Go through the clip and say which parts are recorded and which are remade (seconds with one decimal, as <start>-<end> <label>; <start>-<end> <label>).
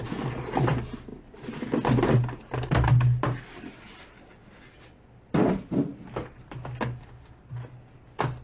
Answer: 0.0-8.4 recorded